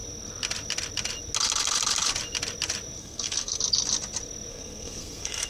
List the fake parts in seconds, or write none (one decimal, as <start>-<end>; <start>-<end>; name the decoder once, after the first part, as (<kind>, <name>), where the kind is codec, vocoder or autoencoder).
3.0-3.6 (codec, SNAC); 4.5-5.5